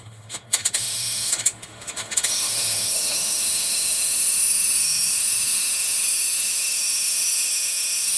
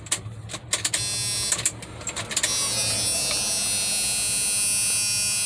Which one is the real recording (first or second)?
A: second